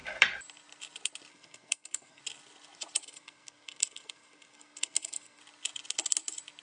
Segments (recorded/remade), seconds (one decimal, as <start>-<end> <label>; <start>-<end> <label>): 0.0-1.3 recorded; 1.3-2.2 remade; 2.2-3.0 recorded; 3.0-5.4 remade; 5.4-6.6 recorded